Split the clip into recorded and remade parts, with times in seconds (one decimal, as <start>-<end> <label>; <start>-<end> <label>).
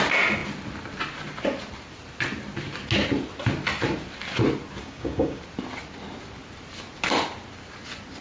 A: 0.0-4.8 recorded; 4.8-5.4 remade; 5.4-8.2 recorded